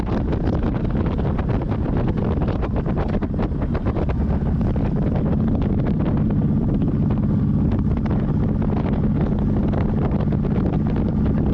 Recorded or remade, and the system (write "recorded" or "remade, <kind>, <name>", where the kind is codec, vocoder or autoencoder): recorded